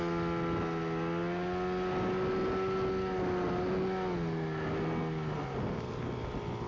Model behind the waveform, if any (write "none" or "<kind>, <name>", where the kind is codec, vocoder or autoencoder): none